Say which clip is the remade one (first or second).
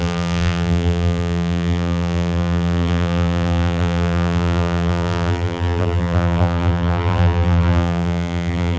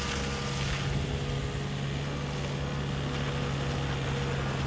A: first